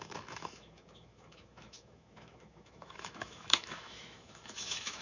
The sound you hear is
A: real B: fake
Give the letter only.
B